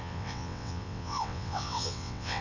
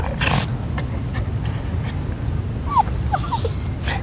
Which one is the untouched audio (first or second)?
second